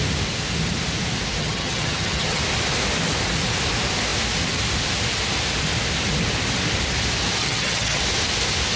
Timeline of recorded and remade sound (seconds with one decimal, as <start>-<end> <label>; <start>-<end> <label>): 0.0-1.4 recorded; 1.4-2.4 remade; 2.4-7.4 recorded; 7.4-8.0 remade; 8.0-8.8 recorded